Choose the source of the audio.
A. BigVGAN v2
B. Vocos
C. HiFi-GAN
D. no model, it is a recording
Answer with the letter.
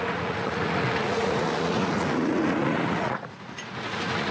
B